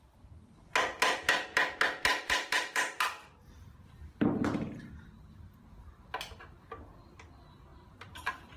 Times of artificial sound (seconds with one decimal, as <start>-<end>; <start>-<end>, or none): 2.1-3.4; 7.7-8.6